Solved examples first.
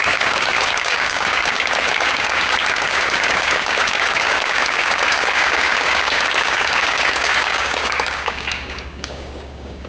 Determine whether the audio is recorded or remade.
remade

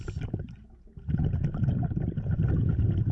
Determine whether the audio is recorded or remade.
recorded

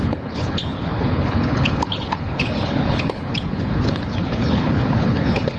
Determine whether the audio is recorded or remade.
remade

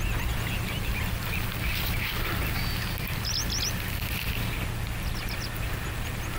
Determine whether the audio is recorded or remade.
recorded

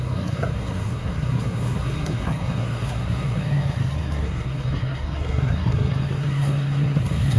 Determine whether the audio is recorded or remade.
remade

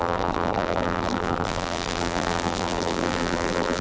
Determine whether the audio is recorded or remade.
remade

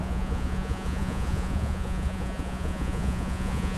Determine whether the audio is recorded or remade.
remade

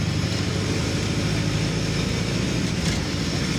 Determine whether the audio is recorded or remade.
remade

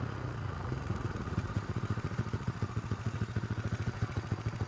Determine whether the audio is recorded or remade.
remade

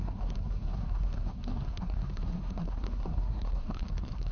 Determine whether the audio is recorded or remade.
remade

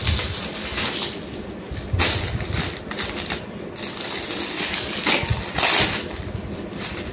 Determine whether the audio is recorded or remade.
recorded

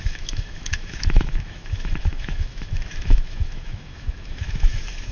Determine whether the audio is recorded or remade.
remade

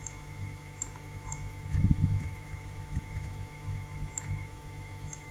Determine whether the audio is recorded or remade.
remade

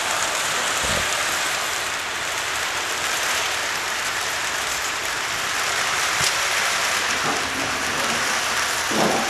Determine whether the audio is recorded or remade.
remade